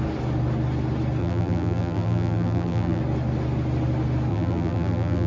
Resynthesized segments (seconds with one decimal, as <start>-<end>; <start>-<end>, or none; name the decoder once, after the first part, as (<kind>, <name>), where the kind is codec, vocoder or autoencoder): 1.2-3.0 (vocoder, BigVGAN v2); 4.3-5.3